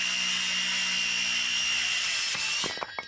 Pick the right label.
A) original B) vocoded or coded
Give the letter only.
A